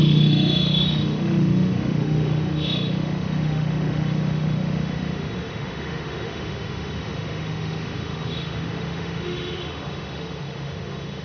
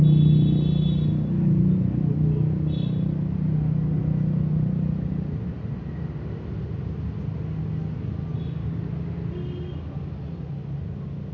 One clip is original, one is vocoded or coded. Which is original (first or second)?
second